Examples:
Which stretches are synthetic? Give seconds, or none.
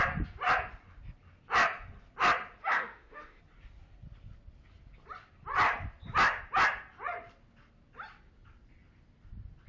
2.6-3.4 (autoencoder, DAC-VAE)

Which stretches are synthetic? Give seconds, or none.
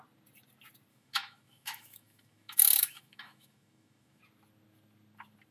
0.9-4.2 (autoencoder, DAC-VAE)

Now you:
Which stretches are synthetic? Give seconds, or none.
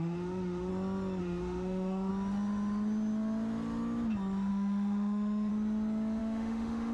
0.0-0.7 (autoencoder, DAC-VAE); 1.2-2.1; 4.5-5.5; 6.2-6.9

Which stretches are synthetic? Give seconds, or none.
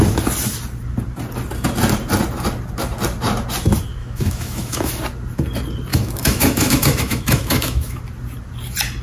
4.0-4.9 (autoencoder, DAC-VAE); 5.9-8.0